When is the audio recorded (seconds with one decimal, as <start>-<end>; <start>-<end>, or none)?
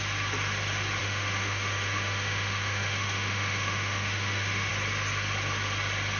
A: 0.0-1.0; 4.7-6.2